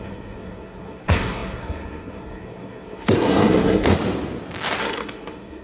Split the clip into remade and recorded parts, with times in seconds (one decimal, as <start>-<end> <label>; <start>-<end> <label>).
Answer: 0.0-3.9 remade; 3.9-4.8 recorded; 4.8-5.6 remade